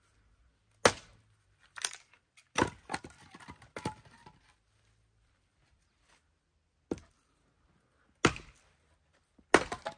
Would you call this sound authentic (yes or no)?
yes